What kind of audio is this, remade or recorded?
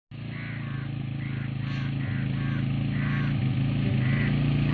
recorded